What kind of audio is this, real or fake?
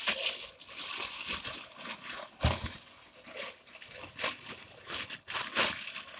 real